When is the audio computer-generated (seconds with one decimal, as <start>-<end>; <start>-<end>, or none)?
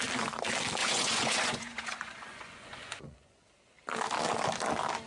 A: 0.8-3.5